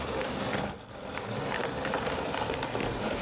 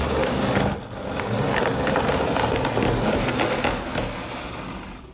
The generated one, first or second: first